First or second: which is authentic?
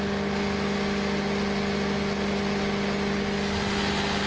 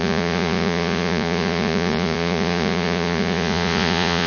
first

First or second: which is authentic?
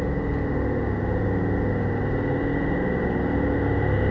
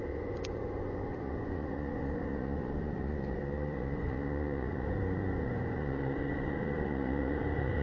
first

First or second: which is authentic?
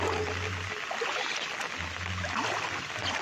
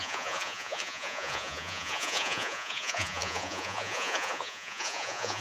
first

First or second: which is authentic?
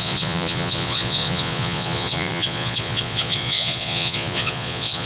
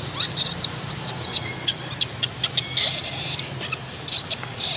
second